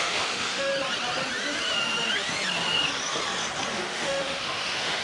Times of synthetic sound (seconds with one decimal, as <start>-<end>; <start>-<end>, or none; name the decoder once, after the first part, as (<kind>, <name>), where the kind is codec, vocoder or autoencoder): 0.0-0.7 (autoencoder, DAC-VAE); 3.7-5.0